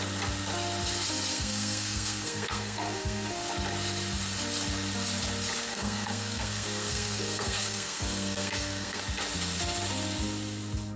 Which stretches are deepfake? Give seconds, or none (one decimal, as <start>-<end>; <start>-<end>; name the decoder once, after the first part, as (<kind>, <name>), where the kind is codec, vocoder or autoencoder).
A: 1.3-3.5 (codec, SNAC); 5.7-9.0